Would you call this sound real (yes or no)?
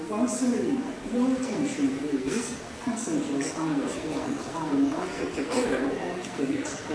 no